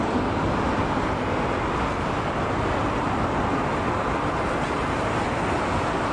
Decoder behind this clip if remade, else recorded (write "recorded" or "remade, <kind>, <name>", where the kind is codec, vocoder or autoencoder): recorded